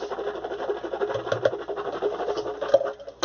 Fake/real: real